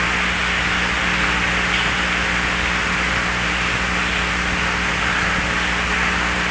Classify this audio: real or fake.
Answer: real